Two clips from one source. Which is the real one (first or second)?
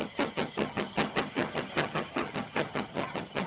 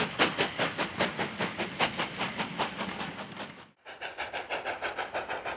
second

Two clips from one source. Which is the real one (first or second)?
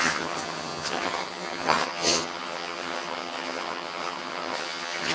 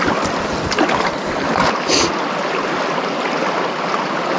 second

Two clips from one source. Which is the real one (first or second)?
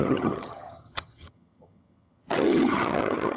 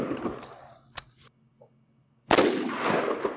second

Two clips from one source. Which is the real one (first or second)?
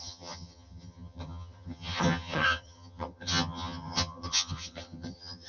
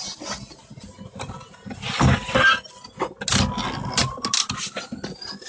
second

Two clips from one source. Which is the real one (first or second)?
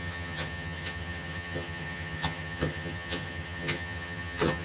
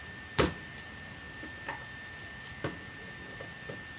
second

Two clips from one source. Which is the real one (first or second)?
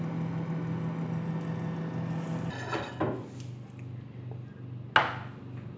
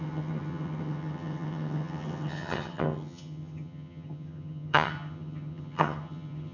first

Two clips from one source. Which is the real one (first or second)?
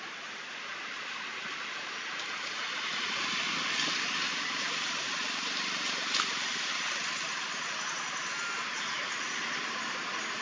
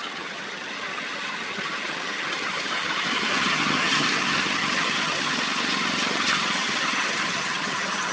first